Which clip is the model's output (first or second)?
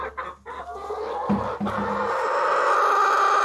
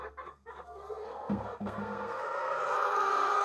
second